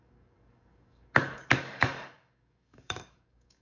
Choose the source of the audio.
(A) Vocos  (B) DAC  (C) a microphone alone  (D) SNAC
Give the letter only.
B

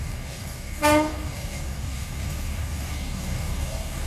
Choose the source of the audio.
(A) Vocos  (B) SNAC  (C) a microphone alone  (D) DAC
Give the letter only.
D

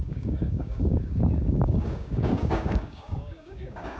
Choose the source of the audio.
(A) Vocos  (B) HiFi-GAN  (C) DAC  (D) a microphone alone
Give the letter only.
C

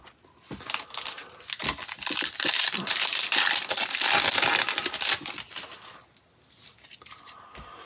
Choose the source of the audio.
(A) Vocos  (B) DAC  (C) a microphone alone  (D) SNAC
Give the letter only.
C